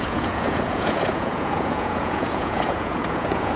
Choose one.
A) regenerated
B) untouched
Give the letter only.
A